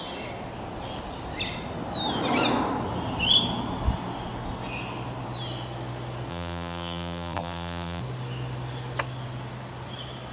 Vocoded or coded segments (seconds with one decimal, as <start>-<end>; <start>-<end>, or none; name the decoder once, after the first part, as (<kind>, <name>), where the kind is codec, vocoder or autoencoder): 6.3-8.0 (vocoder, BigVGAN v2)